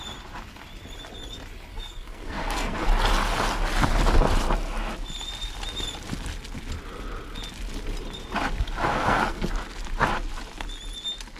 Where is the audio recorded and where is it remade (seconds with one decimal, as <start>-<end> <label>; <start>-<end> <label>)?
0.0-1.7 recorded; 1.7-2.9 remade; 2.9-8.9 recorded; 8.9-9.5 remade; 9.5-11.4 recorded